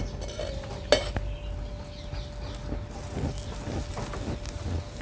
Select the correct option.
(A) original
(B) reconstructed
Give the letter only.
A